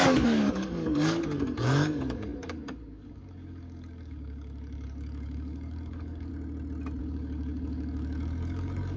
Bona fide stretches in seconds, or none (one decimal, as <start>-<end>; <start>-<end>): 6.3-7.0